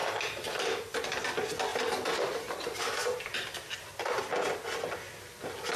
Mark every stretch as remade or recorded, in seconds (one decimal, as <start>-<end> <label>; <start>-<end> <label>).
0.0-5.8 recorded